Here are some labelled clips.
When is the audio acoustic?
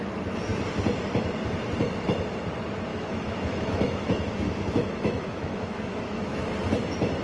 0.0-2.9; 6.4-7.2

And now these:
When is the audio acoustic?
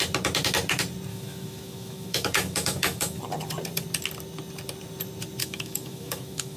0.0-1.1; 3.2-5.4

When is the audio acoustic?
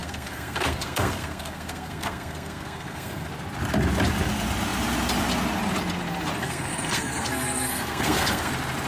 3.3-6.4; 8.5-8.9